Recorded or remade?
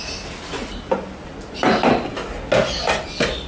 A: recorded